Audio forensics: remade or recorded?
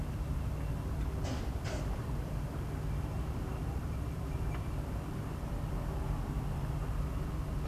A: remade